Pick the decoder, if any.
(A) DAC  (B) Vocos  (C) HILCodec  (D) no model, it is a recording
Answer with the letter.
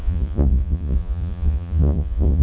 B